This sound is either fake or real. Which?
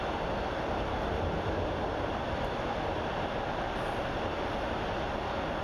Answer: real